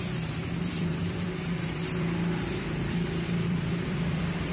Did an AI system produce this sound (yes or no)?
yes